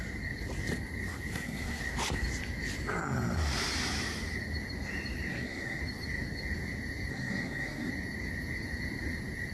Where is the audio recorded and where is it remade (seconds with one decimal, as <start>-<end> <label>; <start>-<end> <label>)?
0.0-1.3 recorded; 1.3-1.8 remade; 1.8-5.3 recorded; 5.3-5.8 remade; 5.8-7.1 recorded; 7.1-7.9 remade; 7.9-9.5 recorded